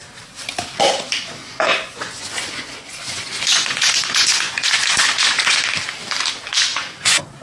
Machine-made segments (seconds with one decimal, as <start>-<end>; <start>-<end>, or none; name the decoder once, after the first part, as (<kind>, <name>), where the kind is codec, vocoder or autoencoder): 1.4-5.6 (vocoder, Vocos); 6.7-7.4